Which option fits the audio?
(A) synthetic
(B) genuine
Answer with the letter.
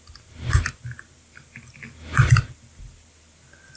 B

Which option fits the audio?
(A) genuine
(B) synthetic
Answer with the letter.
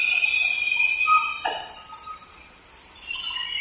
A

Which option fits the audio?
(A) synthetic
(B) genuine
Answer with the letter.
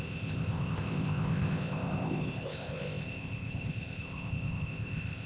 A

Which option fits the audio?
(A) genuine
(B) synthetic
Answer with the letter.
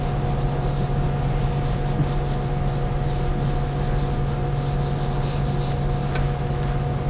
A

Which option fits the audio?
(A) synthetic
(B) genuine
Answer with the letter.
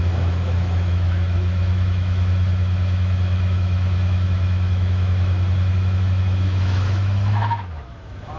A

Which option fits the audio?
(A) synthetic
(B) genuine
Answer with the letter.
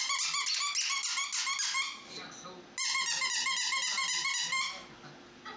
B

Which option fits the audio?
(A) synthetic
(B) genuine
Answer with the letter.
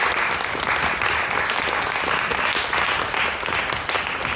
B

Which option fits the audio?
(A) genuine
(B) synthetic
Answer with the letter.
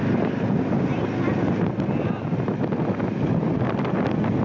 A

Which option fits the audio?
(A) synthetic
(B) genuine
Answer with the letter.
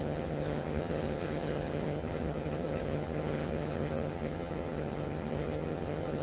A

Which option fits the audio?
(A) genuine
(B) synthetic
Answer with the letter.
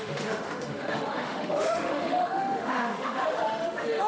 B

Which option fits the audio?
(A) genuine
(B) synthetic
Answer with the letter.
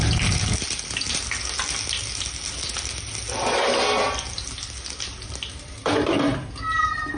A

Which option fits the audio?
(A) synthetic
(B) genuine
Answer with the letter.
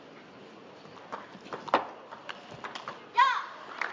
B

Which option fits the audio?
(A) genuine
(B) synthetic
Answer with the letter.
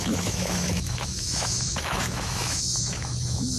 B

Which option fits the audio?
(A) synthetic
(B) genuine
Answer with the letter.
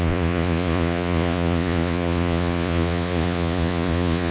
A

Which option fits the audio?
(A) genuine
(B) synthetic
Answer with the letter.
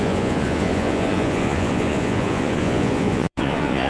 B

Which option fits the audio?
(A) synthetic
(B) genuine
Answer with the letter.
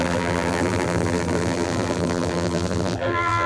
A